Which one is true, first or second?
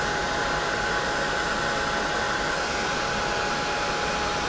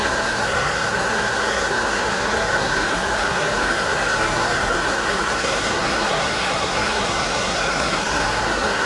first